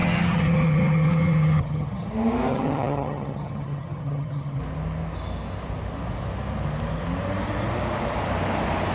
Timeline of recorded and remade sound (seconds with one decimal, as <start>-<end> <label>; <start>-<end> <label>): 0.0-2.1 remade; 2.1-2.5 recorded; 2.5-4.6 remade; 4.6-8.9 recorded